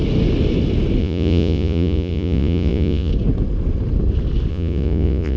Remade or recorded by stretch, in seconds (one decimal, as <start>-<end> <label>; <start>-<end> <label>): 0.0-1.0 recorded; 1.0-3.1 remade; 3.1-4.5 recorded; 4.5-5.4 remade